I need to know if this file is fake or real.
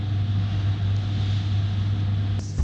real